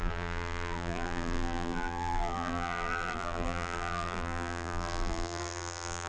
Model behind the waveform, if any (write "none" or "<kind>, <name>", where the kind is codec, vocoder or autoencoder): vocoder, BigVGAN v2